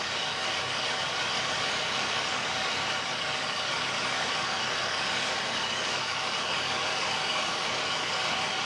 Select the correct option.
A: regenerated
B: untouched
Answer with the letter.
A